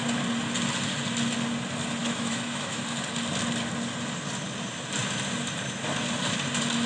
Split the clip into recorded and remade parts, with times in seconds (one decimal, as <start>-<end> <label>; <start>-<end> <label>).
0.0-2.0 recorded; 2.0-2.8 remade; 2.8-6.9 recorded